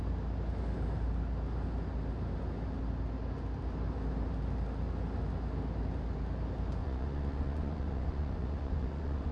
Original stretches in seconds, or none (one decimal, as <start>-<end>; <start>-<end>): 0.0-6.8